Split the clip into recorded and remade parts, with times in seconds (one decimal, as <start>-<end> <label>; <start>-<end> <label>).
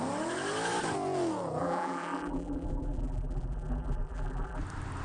0.0-1.6 recorded; 1.6-4.6 remade; 4.6-5.0 recorded